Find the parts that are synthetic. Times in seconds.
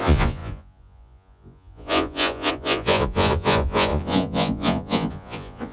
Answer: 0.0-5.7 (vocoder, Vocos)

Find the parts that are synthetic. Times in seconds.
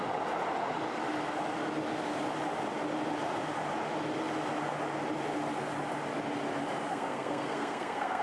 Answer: 6.9-8.2 (codec, SNAC)